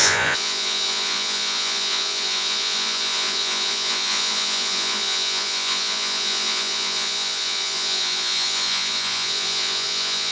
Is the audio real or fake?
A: fake